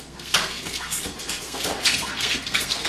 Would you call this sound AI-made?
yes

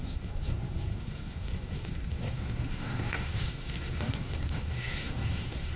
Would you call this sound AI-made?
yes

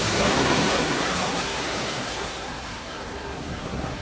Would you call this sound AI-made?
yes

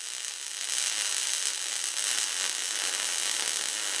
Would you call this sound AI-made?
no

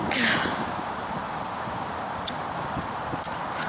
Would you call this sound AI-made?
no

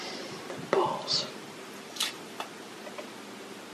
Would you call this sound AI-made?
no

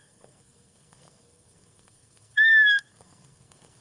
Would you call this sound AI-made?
yes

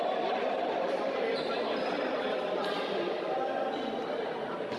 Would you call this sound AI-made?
no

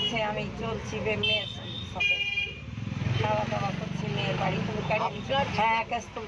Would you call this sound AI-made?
no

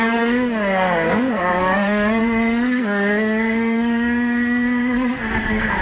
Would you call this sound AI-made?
yes